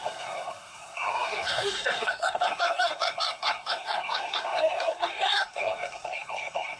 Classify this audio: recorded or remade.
remade